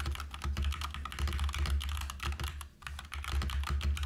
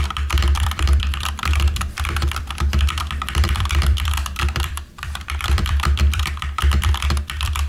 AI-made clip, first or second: second